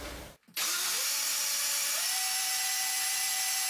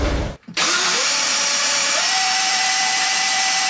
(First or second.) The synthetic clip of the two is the second